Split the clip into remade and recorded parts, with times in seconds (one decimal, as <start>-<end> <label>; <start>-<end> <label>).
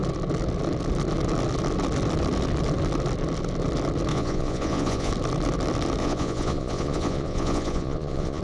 0.0-4.1 recorded; 4.1-5.1 remade; 5.1-6.0 recorded; 6.0-8.4 remade